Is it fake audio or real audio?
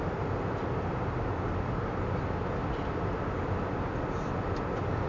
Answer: real